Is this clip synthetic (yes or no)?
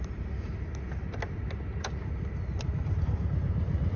no